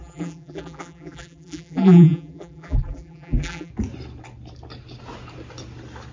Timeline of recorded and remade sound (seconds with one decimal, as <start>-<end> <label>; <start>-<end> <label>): 0.0-3.7 remade; 3.7-6.1 recorded

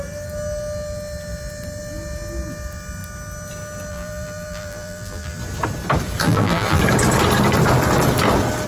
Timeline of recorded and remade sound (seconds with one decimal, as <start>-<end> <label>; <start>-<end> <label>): 0.0-3.9 recorded; 3.9-5.4 remade; 5.4-6.2 recorded; 6.2-6.8 remade; 6.8-8.7 recorded

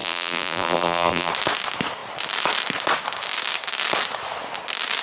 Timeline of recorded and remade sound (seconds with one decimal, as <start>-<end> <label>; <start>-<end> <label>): 0.0-1.3 remade; 1.3-5.0 recorded